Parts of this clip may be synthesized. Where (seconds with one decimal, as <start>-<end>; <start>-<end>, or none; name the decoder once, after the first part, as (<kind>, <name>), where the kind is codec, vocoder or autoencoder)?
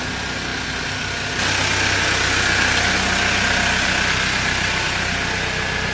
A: none